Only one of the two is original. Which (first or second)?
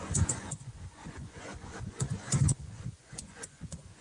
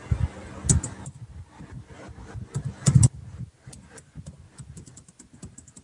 second